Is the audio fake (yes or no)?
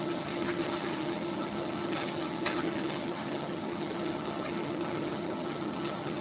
yes